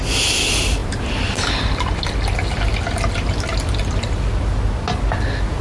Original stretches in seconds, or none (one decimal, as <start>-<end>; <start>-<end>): 0.0-5.6